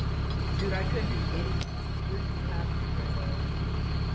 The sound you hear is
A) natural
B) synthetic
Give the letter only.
A